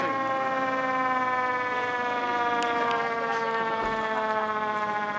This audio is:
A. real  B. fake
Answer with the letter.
A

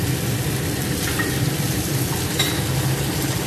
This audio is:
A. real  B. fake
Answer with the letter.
B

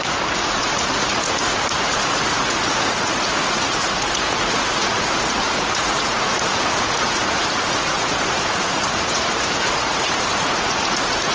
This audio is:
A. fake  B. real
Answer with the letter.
A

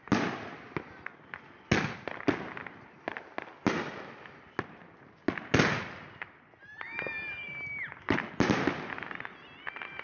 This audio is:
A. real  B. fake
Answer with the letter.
A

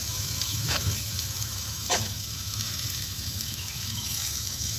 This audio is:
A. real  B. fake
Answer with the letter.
B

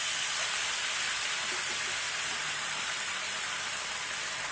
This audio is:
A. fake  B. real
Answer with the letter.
B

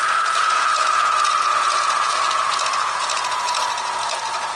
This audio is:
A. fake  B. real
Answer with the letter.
A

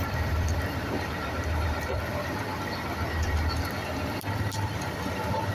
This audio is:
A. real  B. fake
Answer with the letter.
B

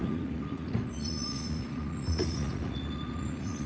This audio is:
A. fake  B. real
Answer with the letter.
A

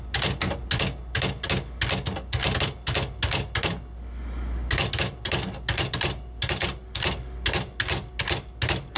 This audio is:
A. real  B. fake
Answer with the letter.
A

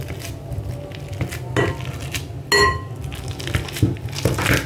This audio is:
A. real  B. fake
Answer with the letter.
A